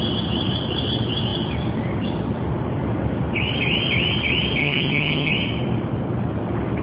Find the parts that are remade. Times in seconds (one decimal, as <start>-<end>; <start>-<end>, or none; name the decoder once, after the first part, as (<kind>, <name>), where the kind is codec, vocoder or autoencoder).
4.6-5.3 (vocoder, HiFi-GAN)